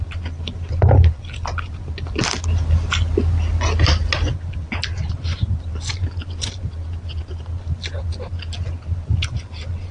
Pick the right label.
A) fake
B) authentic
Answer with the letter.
B